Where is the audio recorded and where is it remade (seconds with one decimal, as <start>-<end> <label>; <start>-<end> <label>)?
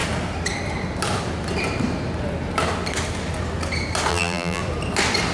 0.0-4.1 recorded; 4.1-4.6 remade; 4.6-5.3 recorded